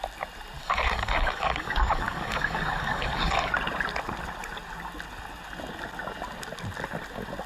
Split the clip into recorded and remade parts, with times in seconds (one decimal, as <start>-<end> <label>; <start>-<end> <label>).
0.0-0.6 recorded; 0.6-3.5 remade; 3.5-7.5 recorded